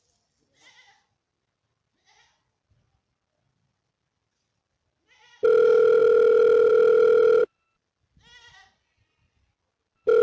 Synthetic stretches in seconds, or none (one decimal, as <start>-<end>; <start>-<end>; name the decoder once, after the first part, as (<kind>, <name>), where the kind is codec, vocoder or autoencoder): none